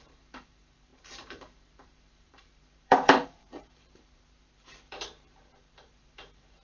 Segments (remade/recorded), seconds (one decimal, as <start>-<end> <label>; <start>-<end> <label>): 0.0-6.6 remade